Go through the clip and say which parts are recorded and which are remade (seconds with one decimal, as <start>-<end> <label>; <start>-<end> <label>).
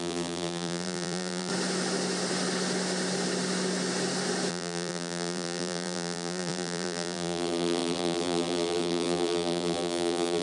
0.0-1.5 remade; 1.5-4.5 recorded; 4.5-10.4 remade